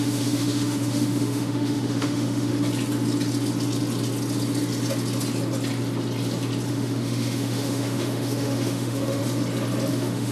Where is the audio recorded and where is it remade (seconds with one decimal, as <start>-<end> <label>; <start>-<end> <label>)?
0.0-2.5 remade; 2.5-6.7 recorded; 6.7-9.2 remade; 9.2-9.9 recorded; 9.9-10.3 remade